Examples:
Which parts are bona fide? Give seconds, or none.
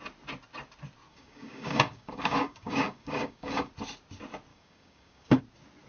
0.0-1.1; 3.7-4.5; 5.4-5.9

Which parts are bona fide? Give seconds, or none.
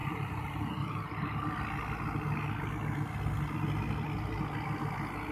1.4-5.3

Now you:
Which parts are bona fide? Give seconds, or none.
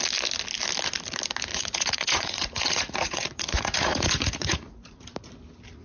0.0-1.5; 5.0-5.8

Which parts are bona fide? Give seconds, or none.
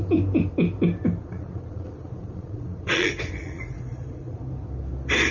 0.0-1.2; 4.4-5.3